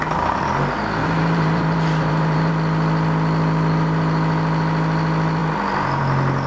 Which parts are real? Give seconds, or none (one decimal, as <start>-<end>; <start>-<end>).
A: 0.0-1.0; 2.5-6.5